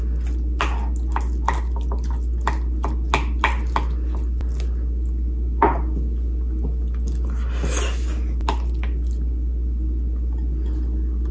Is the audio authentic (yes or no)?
yes